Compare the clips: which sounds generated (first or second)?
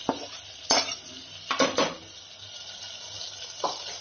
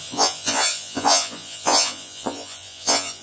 second